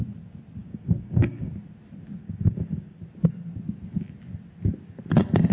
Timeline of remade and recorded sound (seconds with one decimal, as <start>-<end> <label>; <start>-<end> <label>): 0.0-0.6 recorded; 0.6-1.5 remade; 1.5-2.2 recorded; 2.2-3.0 remade; 3.0-5.5 recorded